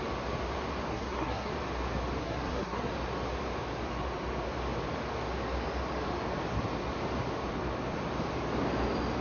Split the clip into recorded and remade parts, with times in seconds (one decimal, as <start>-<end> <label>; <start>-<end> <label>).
0.0-0.9 recorded; 0.9-1.5 remade; 1.5-2.2 recorded; 2.2-2.9 remade; 2.9-9.2 recorded